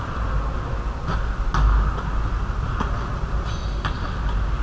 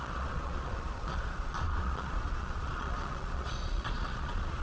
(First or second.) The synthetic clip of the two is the second